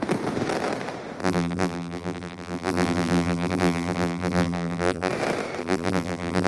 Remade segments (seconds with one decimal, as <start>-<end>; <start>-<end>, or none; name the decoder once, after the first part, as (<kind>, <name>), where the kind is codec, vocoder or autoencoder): 1.2-5.1 (vocoder, BigVGAN v2); 5.6-6.5